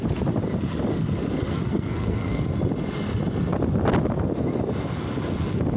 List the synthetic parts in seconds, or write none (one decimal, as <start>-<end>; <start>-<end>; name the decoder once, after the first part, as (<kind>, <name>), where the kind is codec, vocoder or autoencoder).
1.5-2.4 (codec, SNAC)